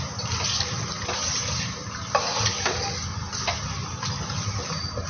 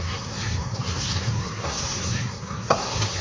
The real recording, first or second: first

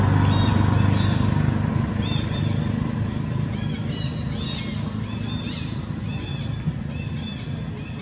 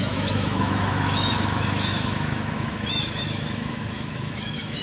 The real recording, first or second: first